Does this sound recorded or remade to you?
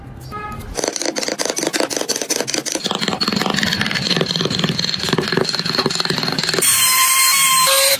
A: recorded